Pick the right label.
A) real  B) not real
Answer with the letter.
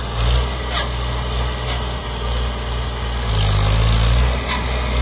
A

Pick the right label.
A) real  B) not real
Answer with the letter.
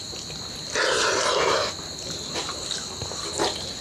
A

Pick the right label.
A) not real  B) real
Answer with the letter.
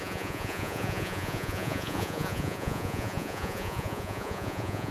A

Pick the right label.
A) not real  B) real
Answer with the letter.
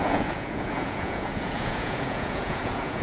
A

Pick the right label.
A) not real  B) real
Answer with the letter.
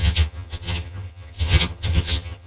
A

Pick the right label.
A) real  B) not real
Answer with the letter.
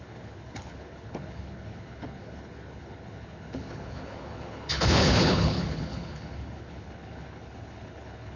B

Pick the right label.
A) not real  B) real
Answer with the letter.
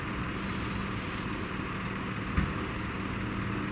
B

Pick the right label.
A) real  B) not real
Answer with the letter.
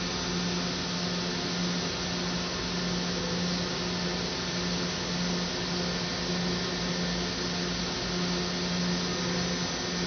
A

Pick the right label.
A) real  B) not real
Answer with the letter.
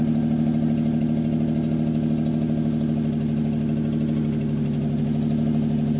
A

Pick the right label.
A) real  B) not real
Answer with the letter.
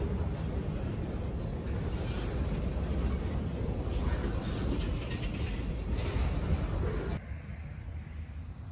A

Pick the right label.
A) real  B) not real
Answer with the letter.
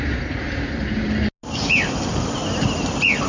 A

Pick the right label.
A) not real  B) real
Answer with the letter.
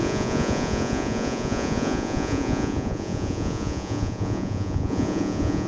A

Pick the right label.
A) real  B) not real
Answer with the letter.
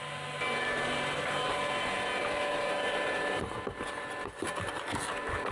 A